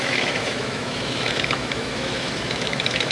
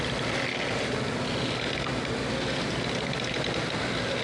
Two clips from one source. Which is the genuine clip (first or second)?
second